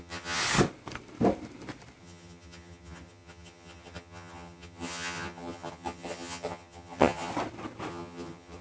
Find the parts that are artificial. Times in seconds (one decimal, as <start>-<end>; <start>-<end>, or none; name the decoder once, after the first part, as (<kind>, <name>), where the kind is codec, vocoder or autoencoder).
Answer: 0.0-0.4 (vocoder, HiFi-GAN); 2.0-7.3; 7.9-8.6